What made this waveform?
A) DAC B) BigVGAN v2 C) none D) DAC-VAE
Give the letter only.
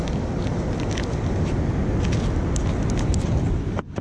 C